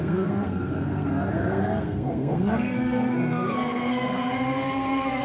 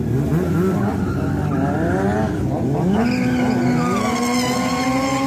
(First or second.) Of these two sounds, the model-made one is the first